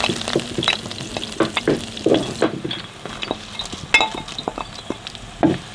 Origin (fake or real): real